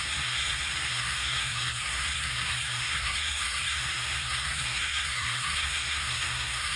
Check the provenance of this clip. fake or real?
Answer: fake